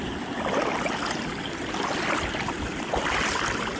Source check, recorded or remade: recorded